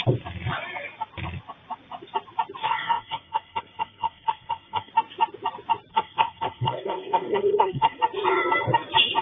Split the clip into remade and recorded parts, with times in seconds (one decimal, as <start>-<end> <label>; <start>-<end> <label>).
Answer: 0.0-2.6 recorded; 2.6-4.9 remade; 4.9-5.9 recorded; 5.9-8.0 remade; 8.0-9.2 recorded